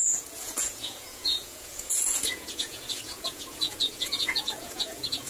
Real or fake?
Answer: fake